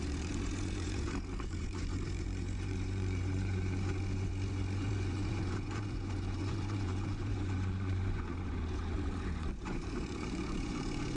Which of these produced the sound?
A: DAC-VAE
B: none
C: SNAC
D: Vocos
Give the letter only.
D